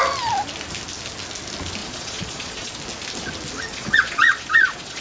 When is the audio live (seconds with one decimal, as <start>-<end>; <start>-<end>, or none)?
0.0-1.8; 2.7-3.7

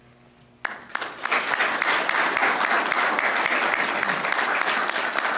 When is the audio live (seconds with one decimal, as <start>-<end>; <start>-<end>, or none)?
0.0-5.4

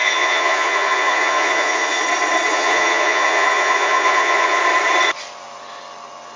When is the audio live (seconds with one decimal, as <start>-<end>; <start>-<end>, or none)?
2.0-2.5; 4.6-6.4

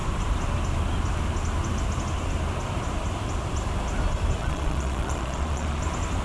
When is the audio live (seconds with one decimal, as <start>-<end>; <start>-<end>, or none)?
0.0-4.4; 5.8-6.2

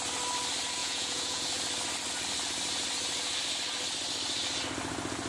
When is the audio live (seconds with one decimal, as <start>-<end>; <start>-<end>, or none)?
0.0-0.8; 1.4-5.3

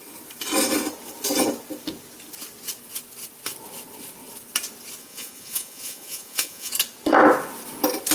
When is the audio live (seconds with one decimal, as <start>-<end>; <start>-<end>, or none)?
0.0-5.0; 6.7-8.1